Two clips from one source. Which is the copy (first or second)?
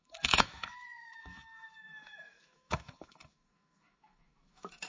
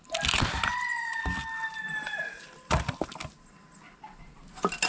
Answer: first